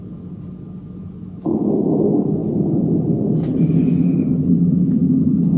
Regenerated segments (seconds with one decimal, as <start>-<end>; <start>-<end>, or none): none